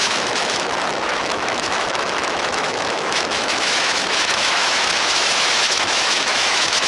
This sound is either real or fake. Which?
fake